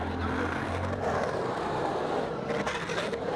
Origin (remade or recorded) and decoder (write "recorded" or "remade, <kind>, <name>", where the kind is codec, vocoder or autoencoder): recorded